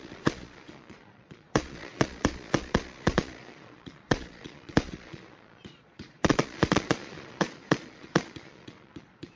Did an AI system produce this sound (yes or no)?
yes